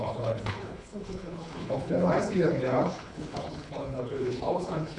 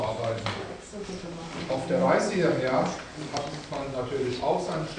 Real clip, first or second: second